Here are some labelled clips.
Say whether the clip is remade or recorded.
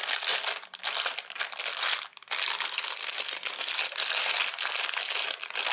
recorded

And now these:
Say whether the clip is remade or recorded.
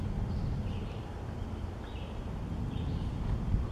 recorded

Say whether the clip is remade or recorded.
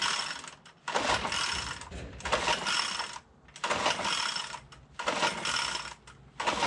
recorded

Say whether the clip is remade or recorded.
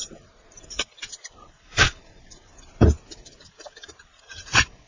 remade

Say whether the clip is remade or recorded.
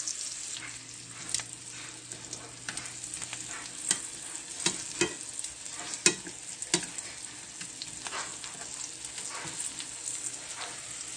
recorded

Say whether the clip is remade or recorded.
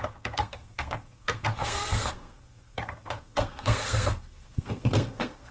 remade